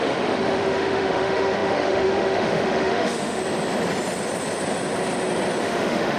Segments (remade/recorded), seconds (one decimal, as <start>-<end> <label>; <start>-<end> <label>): 0.0-3.4 remade; 3.4-5.6 recorded; 5.6-6.2 remade